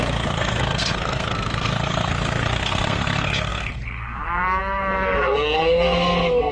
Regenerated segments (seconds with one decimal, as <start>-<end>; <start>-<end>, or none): 0.0-6.5